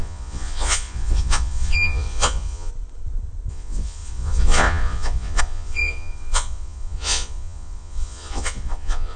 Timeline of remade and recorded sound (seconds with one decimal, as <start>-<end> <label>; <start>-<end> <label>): 0.0-2.7 remade; 2.7-3.5 recorded; 3.5-9.2 remade